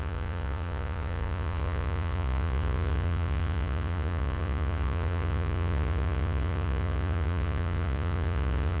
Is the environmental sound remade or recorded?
remade